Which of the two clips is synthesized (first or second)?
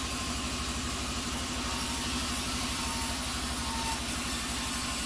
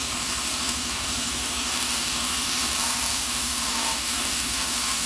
second